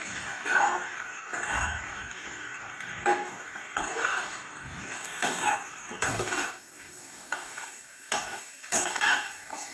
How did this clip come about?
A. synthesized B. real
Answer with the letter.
A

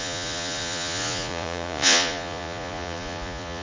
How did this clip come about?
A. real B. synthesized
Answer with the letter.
B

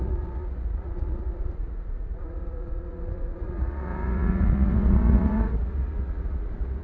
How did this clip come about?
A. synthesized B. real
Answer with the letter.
A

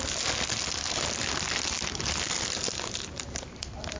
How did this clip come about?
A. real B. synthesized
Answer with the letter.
A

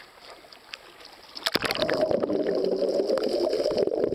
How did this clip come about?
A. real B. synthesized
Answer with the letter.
A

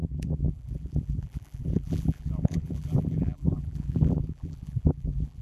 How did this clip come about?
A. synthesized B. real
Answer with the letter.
A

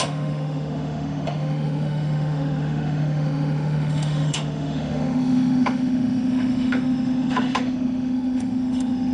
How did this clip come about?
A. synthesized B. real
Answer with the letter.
A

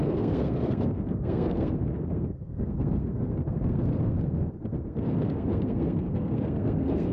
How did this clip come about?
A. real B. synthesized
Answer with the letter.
B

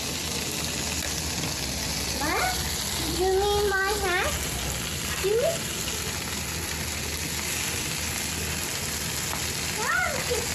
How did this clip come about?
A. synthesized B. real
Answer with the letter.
B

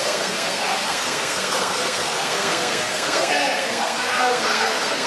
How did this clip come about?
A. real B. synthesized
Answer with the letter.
B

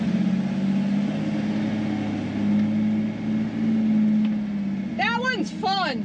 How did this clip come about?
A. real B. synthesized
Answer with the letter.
A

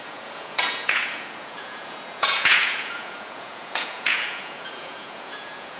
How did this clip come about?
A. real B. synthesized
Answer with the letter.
B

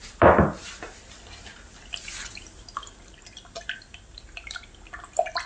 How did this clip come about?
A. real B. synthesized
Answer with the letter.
A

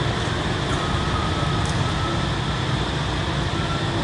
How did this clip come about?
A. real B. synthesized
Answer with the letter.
A